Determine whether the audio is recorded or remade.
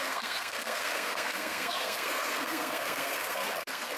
remade